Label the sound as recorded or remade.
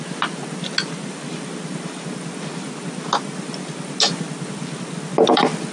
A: recorded